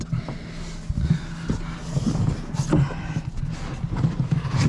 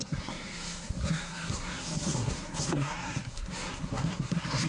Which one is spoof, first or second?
second